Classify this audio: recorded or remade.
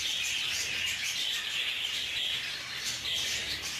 recorded